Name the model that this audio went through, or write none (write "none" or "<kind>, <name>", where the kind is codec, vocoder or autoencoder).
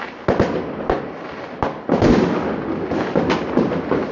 none